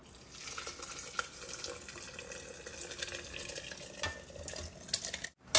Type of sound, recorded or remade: recorded